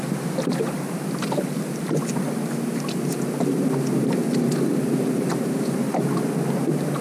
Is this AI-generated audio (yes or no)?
no